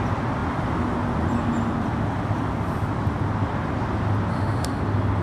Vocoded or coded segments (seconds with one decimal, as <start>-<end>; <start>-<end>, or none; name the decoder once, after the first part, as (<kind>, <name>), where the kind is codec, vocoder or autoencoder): 4.3-4.8 (autoencoder, DAC-VAE)